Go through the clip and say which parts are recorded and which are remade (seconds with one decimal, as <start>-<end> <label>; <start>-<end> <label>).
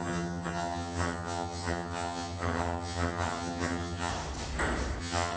0.0-4.1 remade; 4.1-5.0 recorded; 5.0-5.4 remade